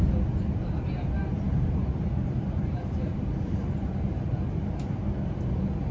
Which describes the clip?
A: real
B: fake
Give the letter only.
A